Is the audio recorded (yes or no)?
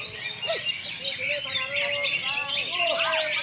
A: yes